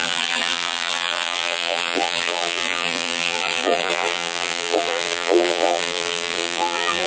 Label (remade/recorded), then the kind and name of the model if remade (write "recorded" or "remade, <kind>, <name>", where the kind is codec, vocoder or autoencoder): remade, vocoder, BigVGAN v2